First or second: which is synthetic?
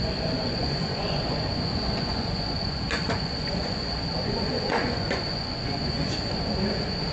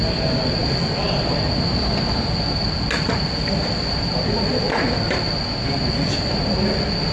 first